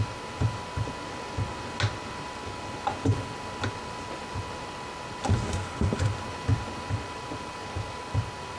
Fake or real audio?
real